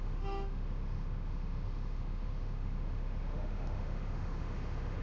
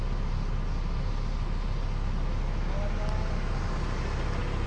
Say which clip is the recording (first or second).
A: second